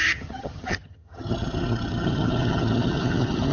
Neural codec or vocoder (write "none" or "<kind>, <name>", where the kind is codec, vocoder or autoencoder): vocoder, HiFi-GAN